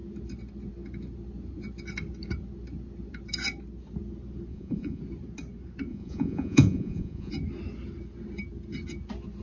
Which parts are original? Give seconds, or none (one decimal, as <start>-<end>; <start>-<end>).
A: 0.0-4.5; 5.0-5.9; 7.3-9.4